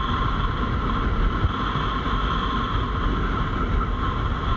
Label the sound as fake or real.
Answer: real